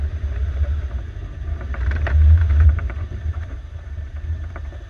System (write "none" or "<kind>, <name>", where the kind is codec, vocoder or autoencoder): vocoder, BigVGAN v2